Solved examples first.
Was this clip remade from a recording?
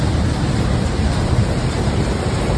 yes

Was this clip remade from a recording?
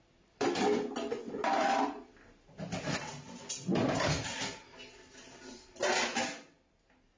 no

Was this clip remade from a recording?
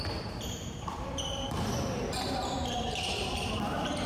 yes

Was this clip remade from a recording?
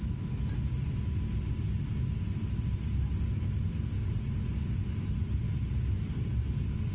no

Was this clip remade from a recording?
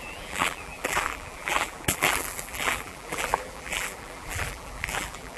yes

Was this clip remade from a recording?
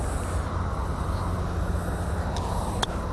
no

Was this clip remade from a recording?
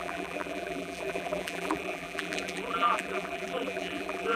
yes